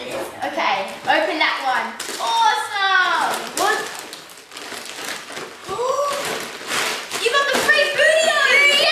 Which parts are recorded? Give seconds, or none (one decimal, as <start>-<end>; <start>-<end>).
0.0-5.6; 6.5-8.9